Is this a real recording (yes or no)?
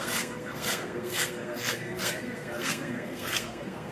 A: no